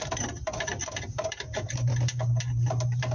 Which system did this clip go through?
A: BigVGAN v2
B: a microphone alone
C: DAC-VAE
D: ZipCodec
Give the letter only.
A